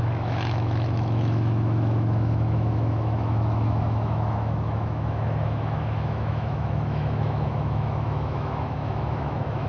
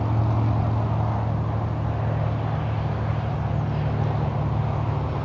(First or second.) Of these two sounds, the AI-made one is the first